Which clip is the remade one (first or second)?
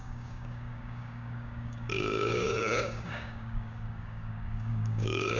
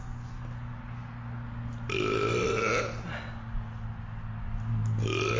first